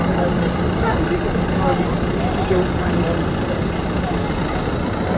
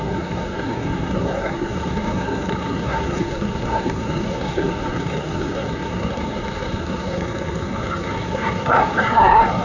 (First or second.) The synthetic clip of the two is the second